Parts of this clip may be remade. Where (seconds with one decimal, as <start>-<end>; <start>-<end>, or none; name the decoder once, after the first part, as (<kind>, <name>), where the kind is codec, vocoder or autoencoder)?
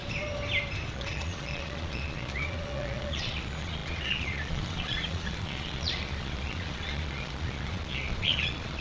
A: 0.9-8.8 (vocoder, Vocos)